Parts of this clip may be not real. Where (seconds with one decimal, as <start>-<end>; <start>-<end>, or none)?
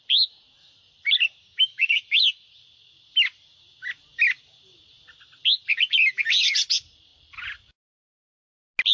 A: 1.4-2.0